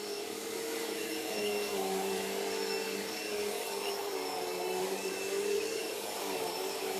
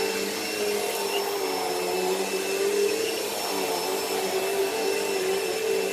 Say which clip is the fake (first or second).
first